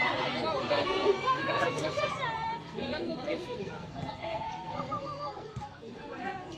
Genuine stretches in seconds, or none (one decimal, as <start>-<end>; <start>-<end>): 0.0-0.6; 2.1-2.5